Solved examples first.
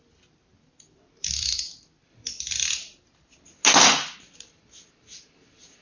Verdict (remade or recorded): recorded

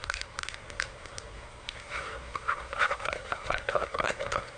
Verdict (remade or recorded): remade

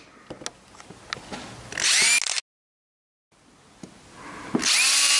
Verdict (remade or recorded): recorded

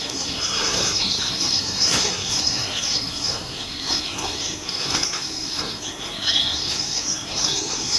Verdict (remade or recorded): remade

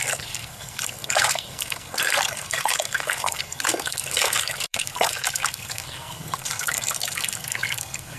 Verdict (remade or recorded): remade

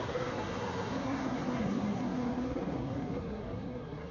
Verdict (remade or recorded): remade